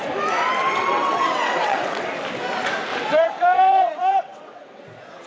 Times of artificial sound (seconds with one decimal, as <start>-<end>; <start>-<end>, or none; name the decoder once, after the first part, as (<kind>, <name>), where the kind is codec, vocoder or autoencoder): 0.6-2.1 (vocoder, WaveNeXt); 2.9-4.8